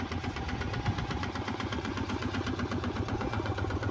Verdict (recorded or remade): remade